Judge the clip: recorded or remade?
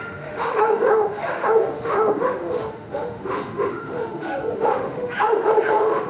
remade